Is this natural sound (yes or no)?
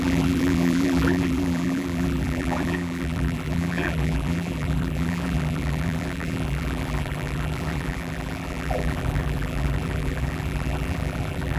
no